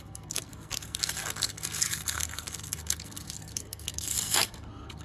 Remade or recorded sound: remade